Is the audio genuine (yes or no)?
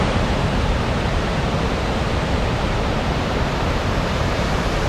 no